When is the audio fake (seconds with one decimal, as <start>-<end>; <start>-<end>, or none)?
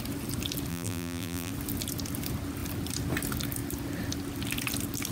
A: 0.7-1.5